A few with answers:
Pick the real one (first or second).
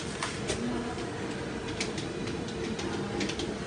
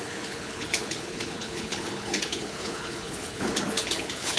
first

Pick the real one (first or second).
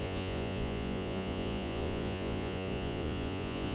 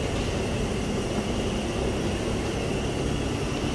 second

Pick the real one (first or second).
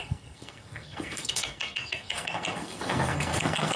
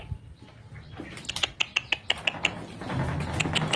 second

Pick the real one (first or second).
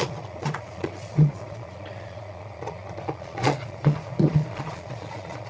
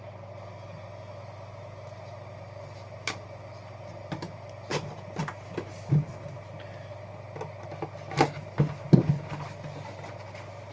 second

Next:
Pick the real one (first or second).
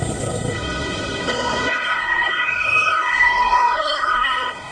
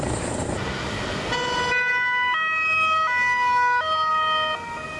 second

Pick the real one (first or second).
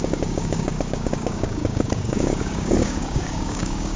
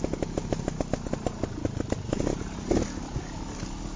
second